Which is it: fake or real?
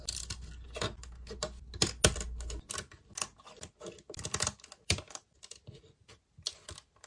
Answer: real